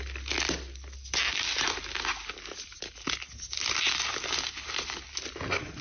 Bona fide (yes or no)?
yes